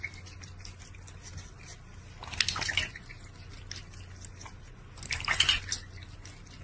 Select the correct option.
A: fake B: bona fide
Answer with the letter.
B